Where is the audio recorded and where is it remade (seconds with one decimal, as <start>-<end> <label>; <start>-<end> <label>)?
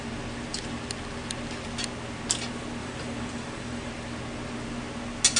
0.0-2.8 recorded; 2.8-3.9 remade; 3.9-5.4 recorded